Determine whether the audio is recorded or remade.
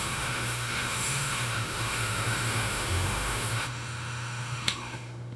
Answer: remade